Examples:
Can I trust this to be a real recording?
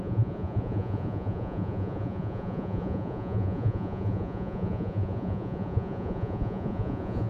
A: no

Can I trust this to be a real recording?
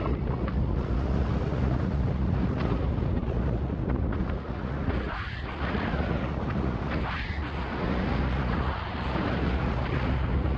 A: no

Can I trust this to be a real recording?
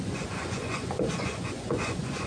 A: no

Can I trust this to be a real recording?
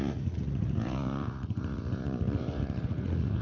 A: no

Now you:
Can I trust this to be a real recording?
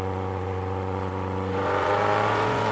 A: no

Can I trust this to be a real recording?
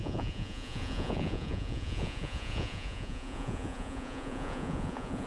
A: no